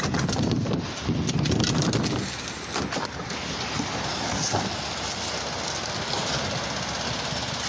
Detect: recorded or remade recorded